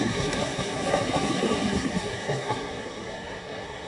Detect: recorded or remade remade